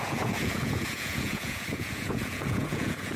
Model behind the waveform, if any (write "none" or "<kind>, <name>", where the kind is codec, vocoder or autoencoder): vocoder, Vocos